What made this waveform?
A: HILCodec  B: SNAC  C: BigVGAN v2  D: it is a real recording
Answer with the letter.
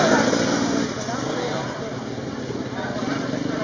D